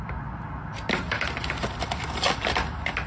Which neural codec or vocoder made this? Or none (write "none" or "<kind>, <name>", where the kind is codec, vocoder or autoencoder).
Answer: none